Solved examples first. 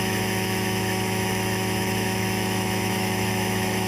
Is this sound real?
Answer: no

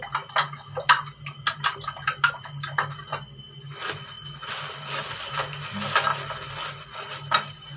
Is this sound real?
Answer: yes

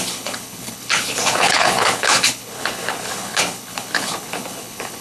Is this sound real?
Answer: no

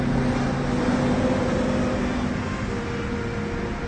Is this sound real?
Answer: yes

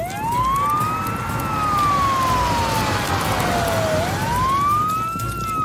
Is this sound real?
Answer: yes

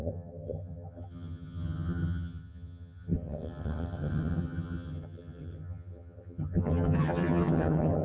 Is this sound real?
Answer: no